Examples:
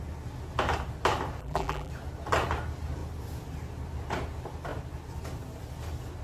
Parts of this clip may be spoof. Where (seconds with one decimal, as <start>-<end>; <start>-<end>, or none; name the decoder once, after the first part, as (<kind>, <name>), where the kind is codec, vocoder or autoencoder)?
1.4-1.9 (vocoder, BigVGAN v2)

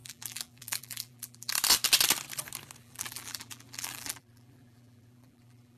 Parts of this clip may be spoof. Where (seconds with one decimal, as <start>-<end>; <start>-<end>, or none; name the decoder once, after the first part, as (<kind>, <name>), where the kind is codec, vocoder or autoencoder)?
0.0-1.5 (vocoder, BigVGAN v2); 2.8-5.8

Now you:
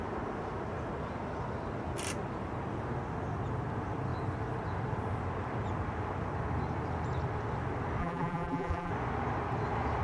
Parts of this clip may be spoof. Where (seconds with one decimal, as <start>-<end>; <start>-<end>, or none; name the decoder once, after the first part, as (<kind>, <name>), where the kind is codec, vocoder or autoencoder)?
8.0-8.9 (vocoder, BigVGAN v2)

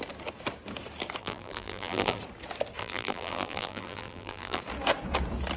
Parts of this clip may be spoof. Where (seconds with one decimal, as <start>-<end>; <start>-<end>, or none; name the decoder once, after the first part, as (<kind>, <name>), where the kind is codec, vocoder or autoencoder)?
1.2-2.2 (vocoder, BigVGAN v2); 2.8-4.6